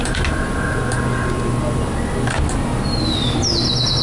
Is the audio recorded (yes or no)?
yes